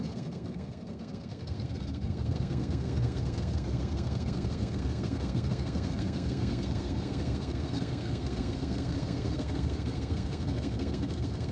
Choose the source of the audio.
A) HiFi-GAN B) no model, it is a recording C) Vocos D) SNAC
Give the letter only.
D